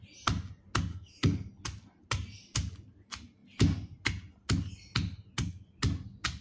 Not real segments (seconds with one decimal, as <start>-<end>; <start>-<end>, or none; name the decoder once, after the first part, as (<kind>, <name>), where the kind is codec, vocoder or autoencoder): 0.9-1.5 (codec, SNAC)